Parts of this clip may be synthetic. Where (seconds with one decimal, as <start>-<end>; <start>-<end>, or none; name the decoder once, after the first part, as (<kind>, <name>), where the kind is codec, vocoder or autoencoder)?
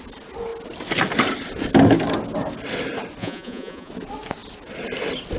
3.2-3.9 (vocoder, Vocos)